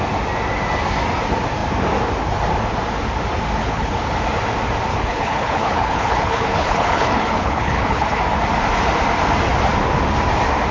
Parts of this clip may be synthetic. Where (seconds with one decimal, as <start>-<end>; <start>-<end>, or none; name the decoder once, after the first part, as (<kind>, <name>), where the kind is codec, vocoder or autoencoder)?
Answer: 3.6-4.2 (codec, HILCodec); 4.9-8.2